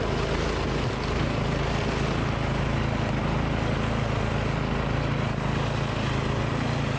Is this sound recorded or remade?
recorded